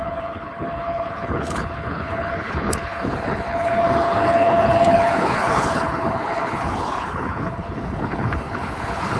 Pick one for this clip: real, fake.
fake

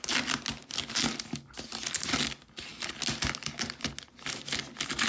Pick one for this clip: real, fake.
real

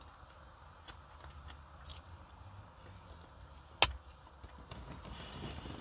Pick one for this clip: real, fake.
real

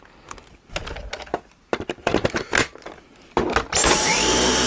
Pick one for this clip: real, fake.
real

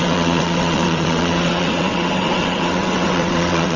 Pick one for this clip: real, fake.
fake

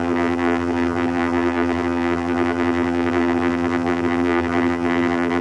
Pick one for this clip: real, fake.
fake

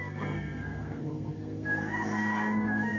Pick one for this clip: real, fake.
fake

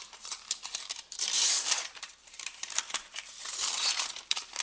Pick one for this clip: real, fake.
fake